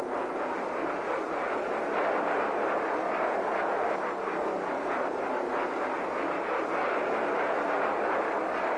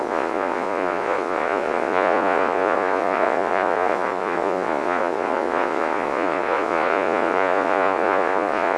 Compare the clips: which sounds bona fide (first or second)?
first